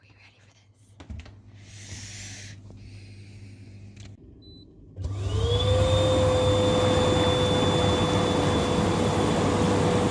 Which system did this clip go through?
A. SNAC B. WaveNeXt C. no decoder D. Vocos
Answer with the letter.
C